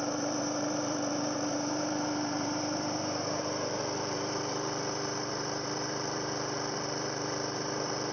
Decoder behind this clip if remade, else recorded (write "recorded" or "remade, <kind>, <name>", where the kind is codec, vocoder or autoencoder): remade, vocoder, BigVGAN v2